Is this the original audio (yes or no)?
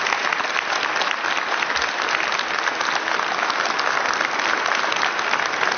yes